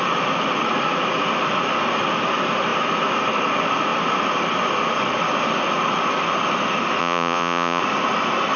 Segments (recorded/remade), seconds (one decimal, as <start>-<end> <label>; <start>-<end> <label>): 0.0-7.0 recorded; 7.0-7.8 remade; 7.8-8.6 recorded